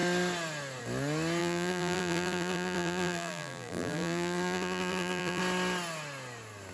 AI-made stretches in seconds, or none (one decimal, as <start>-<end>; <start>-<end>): 1.4-5.4